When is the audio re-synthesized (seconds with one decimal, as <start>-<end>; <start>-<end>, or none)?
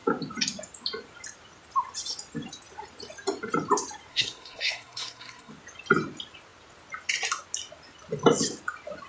4.1-5.5